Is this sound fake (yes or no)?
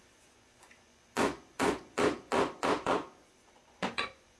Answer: yes